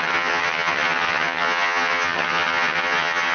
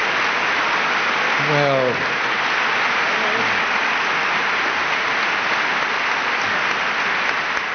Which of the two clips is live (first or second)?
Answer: second